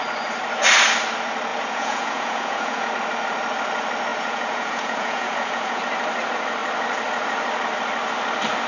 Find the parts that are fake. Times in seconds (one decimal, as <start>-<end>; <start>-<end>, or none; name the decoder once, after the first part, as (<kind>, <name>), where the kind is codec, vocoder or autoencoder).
1.5-2.9 (vocoder, Vocos); 4.1-5.8